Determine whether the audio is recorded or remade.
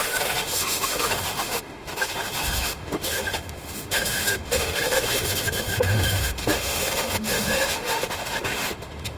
remade